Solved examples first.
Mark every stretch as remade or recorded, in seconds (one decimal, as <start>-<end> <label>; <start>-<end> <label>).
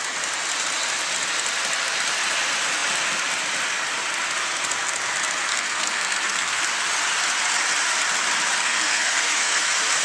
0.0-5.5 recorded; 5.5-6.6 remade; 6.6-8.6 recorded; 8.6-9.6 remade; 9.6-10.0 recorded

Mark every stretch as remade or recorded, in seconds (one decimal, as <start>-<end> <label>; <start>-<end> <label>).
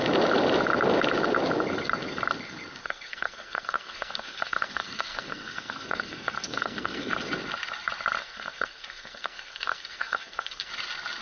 0.0-2.8 recorded; 2.8-7.1 remade; 7.1-8.2 recorded; 8.2-10.7 remade; 10.7-11.2 recorded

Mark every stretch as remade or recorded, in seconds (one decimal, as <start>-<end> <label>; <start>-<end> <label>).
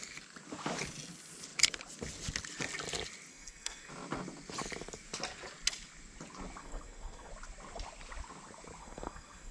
0.0-3.3 recorded; 3.3-3.9 remade; 3.9-6.6 recorded; 6.6-7.3 remade; 7.3-8.8 recorded; 8.8-9.5 remade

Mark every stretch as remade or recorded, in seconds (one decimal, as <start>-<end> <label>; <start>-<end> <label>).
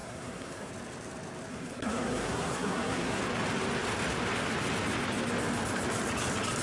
0.0-0.7 remade; 0.7-1.5 recorded; 1.5-3.2 remade; 3.2-6.6 recorded